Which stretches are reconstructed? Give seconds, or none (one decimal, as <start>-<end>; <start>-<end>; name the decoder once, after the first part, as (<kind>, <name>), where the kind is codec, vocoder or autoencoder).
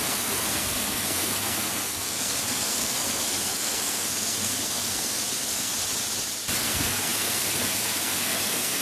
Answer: 0.0-5.7 (codec, SNAC); 6.6-8.8